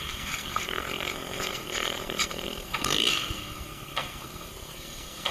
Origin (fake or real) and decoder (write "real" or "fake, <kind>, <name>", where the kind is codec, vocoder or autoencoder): fake, codec, SNAC